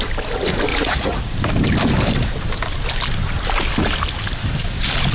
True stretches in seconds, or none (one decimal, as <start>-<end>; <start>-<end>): 0.0-0.7; 1.3-5.1